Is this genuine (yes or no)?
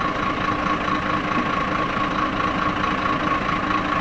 yes